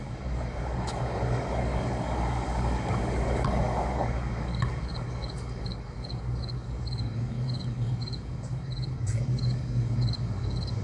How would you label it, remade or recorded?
remade